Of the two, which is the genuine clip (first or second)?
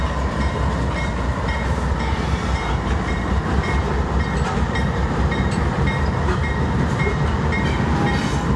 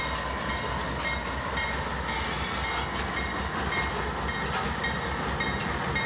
second